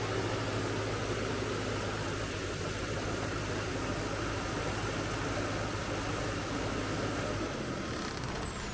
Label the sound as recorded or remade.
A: recorded